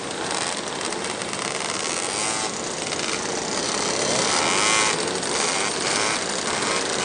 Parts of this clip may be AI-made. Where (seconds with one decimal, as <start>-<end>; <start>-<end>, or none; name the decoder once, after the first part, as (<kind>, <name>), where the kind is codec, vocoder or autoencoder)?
none